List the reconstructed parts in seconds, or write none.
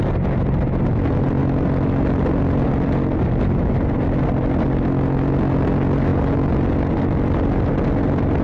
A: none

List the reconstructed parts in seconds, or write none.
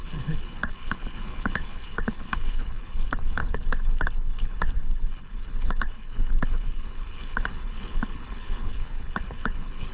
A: 0.0-9.9 (codec, HILCodec)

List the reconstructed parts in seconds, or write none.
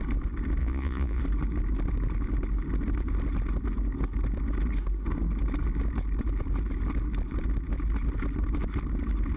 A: 0.6-1.2 (vocoder, Vocos)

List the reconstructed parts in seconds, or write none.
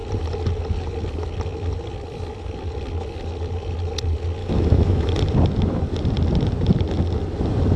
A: 4.4-5.1 (autoencoder, DAC-VAE)